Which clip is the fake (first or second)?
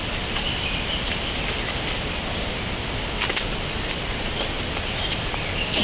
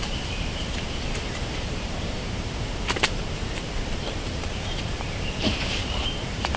second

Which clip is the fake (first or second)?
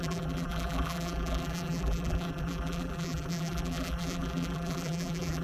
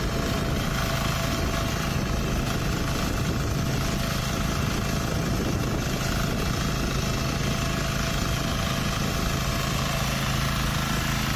first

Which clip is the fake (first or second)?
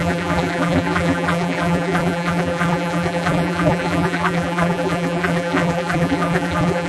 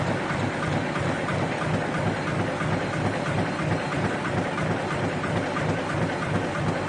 first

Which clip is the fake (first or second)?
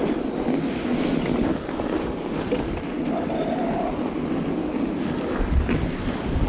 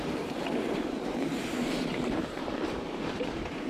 second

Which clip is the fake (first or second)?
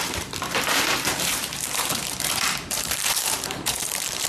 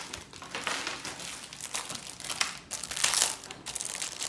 first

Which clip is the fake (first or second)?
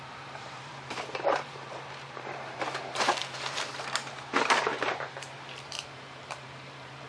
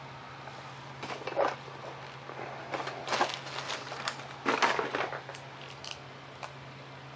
first